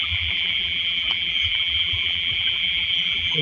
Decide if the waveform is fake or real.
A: fake